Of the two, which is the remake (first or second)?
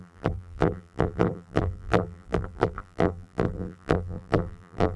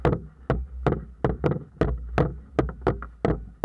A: first